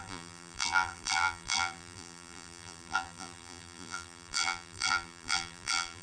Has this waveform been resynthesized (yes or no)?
yes